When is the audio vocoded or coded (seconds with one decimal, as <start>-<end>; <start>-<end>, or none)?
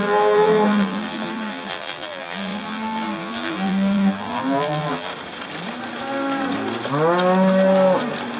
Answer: 0.0-5.1